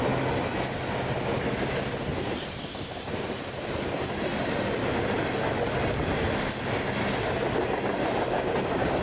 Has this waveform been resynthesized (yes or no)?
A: no